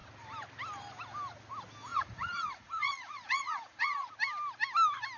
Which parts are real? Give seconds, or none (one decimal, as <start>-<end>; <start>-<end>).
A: 0.0-1.9; 4.1-5.2

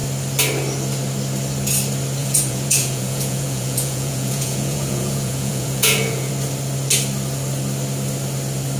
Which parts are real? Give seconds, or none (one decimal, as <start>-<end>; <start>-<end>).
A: 0.0-2.2; 6.3-8.8

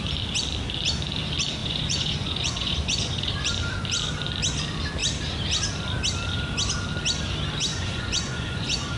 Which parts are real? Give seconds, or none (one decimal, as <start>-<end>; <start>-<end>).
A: 0.0-1.6; 3.3-7.7

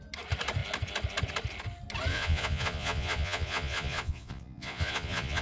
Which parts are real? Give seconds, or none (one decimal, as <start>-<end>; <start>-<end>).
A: 0.0-2.1

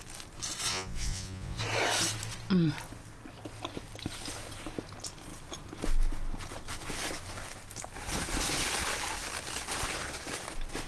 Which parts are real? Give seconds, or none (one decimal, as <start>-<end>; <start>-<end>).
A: 0.0-0.7; 1.6-10.9

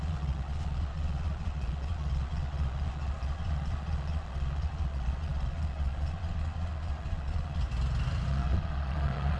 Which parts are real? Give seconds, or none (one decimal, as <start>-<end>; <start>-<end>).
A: 7.6-8.3